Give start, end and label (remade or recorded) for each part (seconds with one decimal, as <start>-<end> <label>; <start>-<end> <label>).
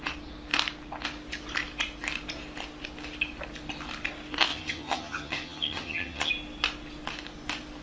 0.0-4.5 recorded; 4.5-6.3 remade; 6.3-7.8 recorded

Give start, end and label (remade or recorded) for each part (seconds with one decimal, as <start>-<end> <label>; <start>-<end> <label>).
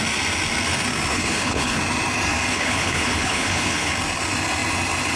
0.0-1.1 recorded; 1.1-1.8 remade; 1.8-2.5 recorded; 2.5-3.9 remade; 3.9-5.2 recorded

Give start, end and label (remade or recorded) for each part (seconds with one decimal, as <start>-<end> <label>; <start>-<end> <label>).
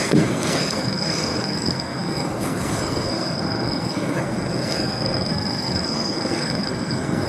0.0-7.3 remade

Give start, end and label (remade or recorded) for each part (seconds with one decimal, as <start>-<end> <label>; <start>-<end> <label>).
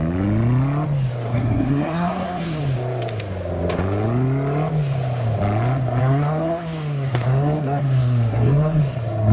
0.0-1.3 recorded; 1.3-2.6 remade; 2.6-6.0 recorded; 6.0-8.8 remade; 8.8-9.3 recorded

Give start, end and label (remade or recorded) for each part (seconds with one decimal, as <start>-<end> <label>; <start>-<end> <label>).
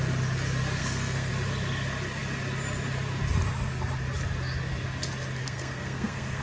0.0-0.8 recorded; 0.8-1.3 remade; 1.3-5.4 recorded; 5.4-6.4 remade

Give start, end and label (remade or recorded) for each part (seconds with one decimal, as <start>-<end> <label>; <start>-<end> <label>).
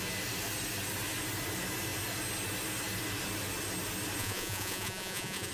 0.0-4.2 recorded; 4.2-5.5 remade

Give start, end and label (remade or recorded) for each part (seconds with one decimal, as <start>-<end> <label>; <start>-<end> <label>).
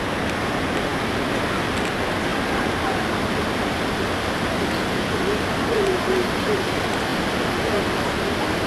0.0-8.7 recorded